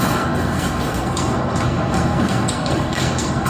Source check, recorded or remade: remade